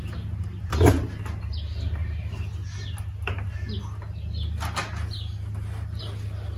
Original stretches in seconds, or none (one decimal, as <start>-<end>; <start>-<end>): 0.0-6.6